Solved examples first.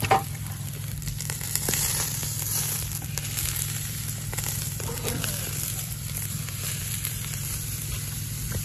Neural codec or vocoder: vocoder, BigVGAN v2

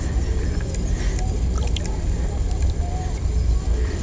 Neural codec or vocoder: none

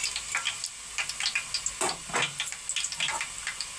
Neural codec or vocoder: none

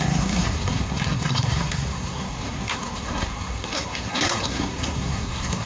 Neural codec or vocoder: codec, SNAC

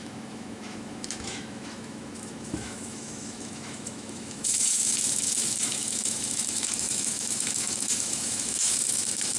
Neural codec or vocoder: autoencoder, DAC-VAE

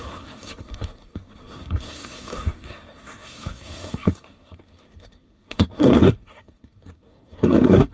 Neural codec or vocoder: codec, SNAC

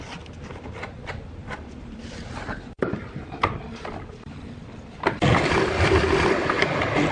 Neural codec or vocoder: vocoder, BigVGAN v2